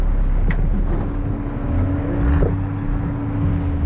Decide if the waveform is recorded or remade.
recorded